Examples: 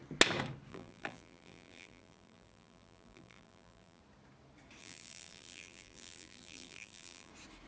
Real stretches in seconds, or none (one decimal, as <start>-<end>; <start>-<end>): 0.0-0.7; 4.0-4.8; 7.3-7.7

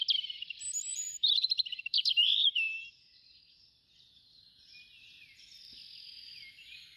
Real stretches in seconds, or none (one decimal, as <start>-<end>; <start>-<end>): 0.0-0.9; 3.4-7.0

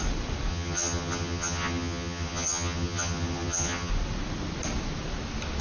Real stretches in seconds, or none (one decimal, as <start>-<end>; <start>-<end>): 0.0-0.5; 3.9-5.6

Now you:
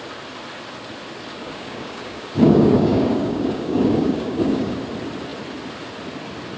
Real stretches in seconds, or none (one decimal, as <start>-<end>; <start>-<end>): 0.0-1.4; 4.8-6.6